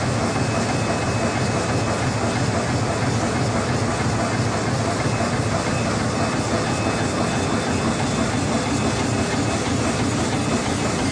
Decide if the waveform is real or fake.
real